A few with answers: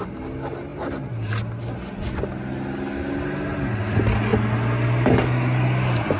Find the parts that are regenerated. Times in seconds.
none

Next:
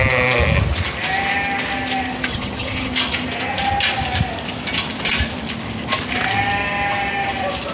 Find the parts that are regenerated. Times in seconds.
2.3-2.9 (vocoder, HiFi-GAN)

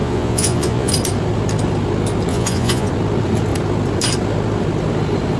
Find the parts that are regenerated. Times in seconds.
0.0-0.9 (vocoder, Vocos); 2.3-2.9